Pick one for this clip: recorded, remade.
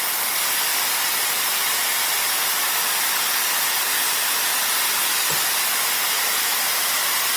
recorded